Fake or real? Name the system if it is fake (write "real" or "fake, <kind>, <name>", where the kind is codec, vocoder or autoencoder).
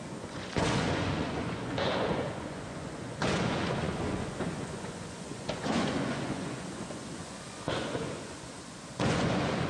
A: fake, vocoder, Vocos